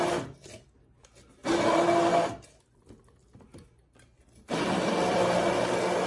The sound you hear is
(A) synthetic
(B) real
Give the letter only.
B